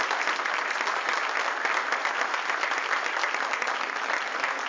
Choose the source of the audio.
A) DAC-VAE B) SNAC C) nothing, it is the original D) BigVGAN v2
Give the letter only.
C